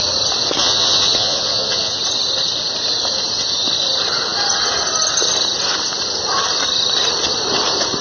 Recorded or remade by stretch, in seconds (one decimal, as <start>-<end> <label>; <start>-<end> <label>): 0.0-0.6 recorded; 0.6-2.0 remade; 2.0-8.0 recorded

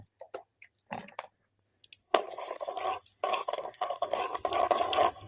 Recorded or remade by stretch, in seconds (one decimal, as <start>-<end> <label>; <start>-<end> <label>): 0.0-2.0 recorded; 2.0-2.7 remade; 2.7-3.3 recorded; 3.3-4.2 remade; 4.2-5.3 recorded

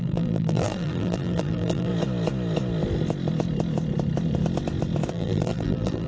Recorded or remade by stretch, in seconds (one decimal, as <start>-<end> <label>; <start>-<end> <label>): 0.0-1.9 remade; 1.9-5.1 recorded; 5.1-6.1 remade

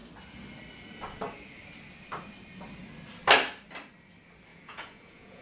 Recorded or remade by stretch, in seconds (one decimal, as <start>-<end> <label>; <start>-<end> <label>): 0.0-4.5 recorded; 4.5-5.4 remade

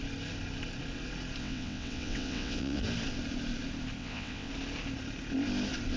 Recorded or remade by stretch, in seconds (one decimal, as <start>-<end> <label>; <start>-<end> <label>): 0.0-1.4 recorded; 1.4-2.8 remade; 2.8-4.0 recorded; 4.0-4.5 remade; 4.5-6.0 recorded

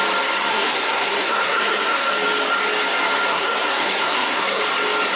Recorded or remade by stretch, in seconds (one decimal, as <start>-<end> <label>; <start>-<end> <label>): 0.0-0.5 recorded; 0.5-2.1 remade; 2.1-3.3 recorded; 3.3-4.6 remade; 4.6-5.2 recorded